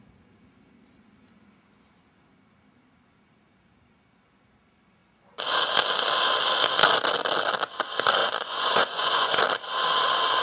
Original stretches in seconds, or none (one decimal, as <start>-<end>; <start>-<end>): 0.0-8.2; 9.4-10.4